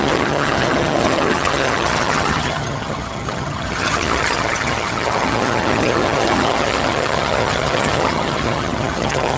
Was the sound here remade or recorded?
remade